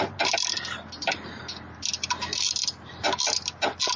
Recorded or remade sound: recorded